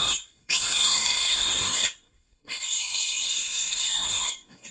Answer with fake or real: fake